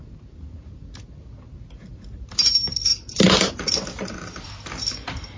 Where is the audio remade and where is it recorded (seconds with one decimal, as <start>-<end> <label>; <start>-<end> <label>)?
0.0-2.9 recorded; 2.9-3.5 remade; 3.5-5.4 recorded